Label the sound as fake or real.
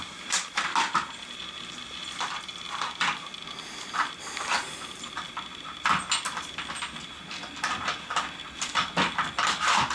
real